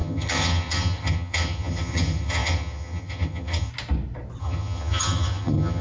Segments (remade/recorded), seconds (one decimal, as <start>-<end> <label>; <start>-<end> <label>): 0.0-3.7 remade; 3.7-4.4 recorded; 4.4-5.8 remade